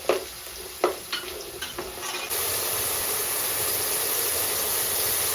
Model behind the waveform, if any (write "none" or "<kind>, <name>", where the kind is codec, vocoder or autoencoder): none